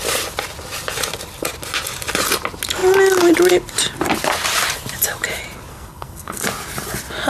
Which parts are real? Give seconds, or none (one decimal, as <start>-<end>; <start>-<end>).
0.0-5.7; 6.4-7.3